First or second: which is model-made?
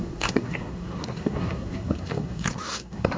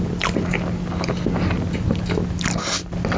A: first